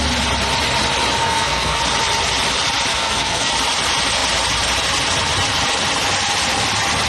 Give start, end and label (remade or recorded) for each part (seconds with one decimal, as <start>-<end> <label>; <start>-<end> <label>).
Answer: 0.0-1.2 recorded; 1.2-1.8 remade; 1.8-2.9 recorded; 2.9-3.5 remade; 3.5-7.1 recorded